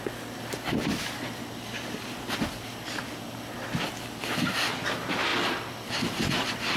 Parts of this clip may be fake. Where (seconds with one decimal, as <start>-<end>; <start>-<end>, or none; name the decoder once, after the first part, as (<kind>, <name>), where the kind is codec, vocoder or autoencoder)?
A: none